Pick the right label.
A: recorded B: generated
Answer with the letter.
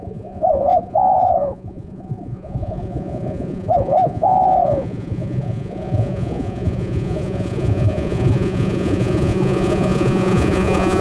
B